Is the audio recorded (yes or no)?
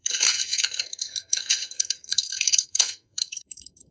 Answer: no